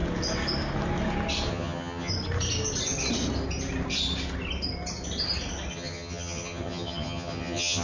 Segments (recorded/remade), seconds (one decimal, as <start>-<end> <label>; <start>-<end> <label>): 0.0-1.5 recorded; 1.5-2.1 remade; 2.1-5.7 recorded; 5.7-7.8 remade